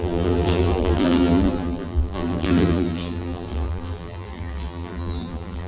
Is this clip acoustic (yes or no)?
no